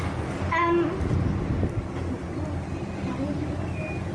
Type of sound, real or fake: real